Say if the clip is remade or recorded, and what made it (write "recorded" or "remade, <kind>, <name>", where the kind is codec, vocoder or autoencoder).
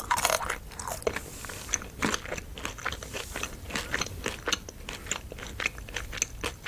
recorded